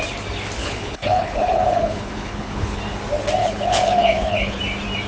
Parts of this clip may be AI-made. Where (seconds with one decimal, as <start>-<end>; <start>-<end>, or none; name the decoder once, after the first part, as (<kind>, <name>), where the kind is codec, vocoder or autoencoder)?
0.6-2.8 (codec, HILCodec); 3.4-4.6